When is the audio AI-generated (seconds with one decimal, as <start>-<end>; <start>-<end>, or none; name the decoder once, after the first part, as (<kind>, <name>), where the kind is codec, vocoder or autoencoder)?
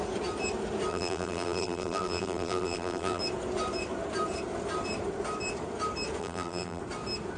0.9-3.2 (vocoder, BigVGAN v2); 6.2-6.8